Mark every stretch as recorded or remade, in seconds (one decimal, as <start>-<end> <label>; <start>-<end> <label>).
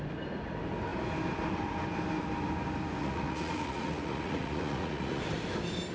0.0-3.0 recorded; 3.0-5.2 remade; 5.2-5.9 recorded